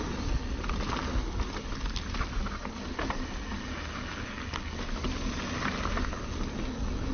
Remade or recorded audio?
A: recorded